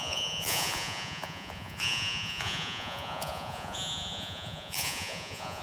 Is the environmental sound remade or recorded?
remade